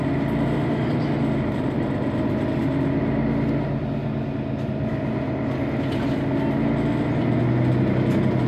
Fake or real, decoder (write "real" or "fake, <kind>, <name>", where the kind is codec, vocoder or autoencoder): real